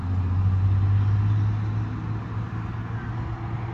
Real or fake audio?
real